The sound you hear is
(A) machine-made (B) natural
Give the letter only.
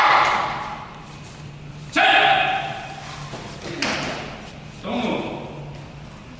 B